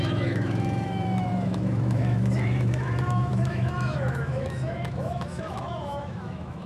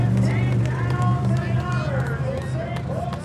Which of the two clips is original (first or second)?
second